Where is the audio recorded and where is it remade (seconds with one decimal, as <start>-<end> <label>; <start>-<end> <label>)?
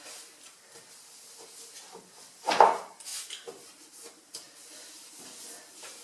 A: 0.0-6.0 recorded